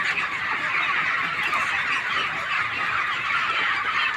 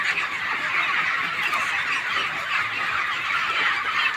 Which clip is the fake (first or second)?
second